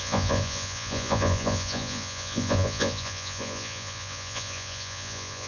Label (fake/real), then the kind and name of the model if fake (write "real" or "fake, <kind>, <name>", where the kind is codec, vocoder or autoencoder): fake, vocoder, Vocos